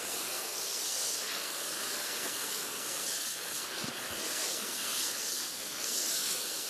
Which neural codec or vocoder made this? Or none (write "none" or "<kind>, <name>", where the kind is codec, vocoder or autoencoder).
codec, SNAC